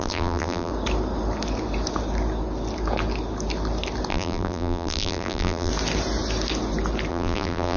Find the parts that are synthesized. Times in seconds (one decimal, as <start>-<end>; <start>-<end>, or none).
0.0-0.7; 4.1-5.7; 7.1-7.8